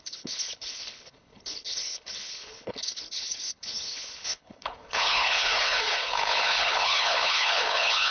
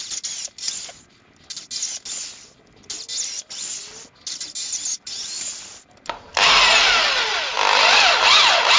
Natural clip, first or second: second